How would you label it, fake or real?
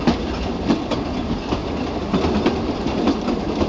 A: real